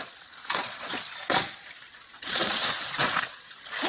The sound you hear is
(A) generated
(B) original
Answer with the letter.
A